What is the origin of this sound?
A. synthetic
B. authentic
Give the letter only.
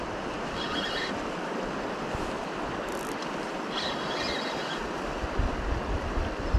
B